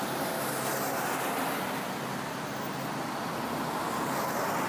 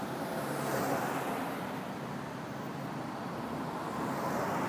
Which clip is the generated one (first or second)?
second